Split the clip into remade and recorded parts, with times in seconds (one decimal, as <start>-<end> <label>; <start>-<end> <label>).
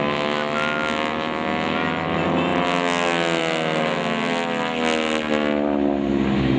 0.0-6.6 recorded